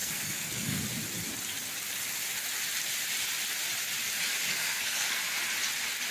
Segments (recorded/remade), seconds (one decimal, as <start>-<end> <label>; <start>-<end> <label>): 0.0-0.8 remade; 0.8-4.5 recorded; 4.5-5.2 remade; 5.2-6.1 recorded